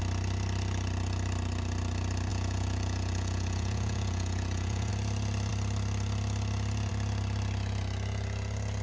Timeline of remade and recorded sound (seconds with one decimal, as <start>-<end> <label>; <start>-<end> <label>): 0.0-2.3 recorded; 2.3-4.9 remade; 4.9-8.8 recorded